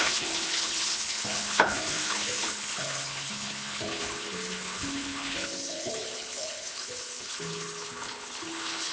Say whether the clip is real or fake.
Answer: fake